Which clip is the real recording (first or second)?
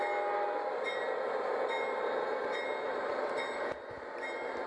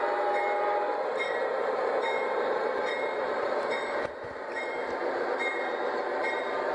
first